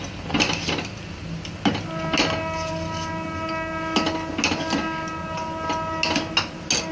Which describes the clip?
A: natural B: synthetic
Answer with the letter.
A